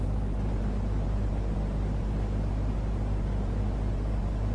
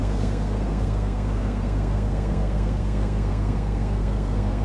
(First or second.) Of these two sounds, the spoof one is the second